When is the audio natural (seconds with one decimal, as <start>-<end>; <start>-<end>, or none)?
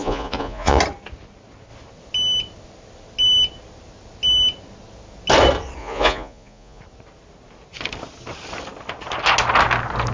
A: 0.8-5.8; 6.8-10.1